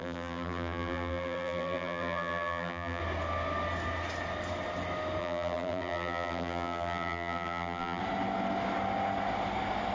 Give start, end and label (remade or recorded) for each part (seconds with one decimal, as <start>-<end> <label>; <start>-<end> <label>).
0.0-3.0 remade; 3.0-5.2 recorded; 5.2-8.0 remade; 8.0-9.9 recorded